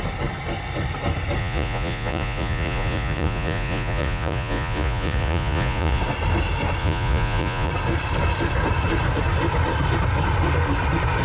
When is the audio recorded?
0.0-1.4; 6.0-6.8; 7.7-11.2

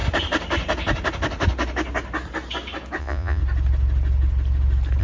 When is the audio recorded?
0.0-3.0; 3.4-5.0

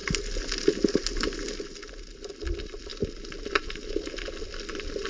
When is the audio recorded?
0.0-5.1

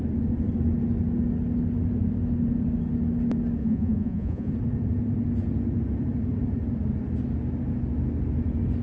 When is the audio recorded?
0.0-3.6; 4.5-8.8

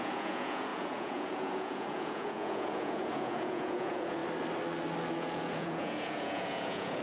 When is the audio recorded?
4.2-5.1

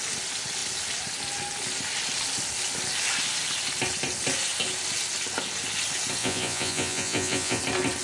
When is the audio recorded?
0.0-6.2; 7.6-8.0

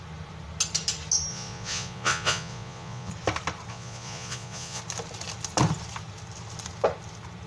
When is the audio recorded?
0.0-1.3; 3.1-3.7; 4.8-7.5

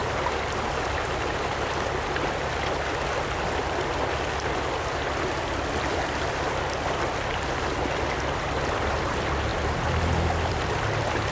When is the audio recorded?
0.0-11.3